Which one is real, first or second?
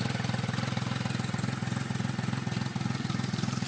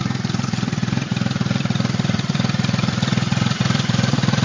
first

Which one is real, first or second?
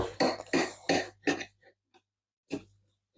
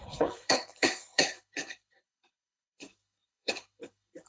first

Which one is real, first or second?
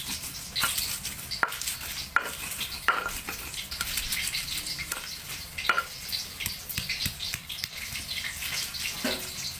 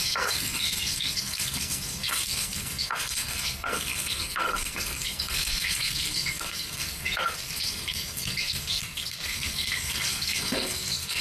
first